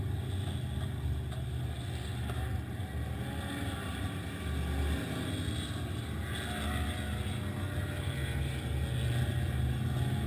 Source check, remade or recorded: recorded